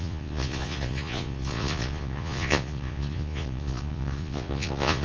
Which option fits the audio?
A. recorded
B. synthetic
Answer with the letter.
B